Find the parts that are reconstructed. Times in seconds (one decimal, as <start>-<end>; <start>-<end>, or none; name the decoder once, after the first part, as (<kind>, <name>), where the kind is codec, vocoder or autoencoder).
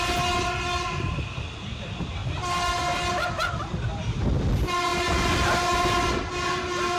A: none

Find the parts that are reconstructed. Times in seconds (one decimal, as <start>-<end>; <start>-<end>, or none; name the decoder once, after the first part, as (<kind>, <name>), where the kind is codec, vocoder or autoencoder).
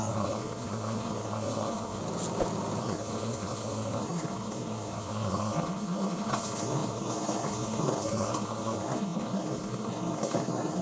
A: 0.0-2.0 (codec, SNAC); 2.8-10.8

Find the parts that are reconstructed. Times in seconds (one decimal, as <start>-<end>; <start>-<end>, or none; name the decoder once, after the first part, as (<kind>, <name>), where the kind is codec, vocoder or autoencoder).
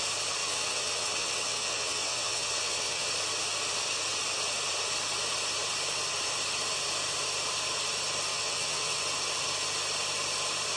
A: 0.4-3.1 (vocoder, WaveNeXt); 8.3-9.0